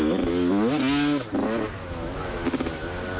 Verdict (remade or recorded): recorded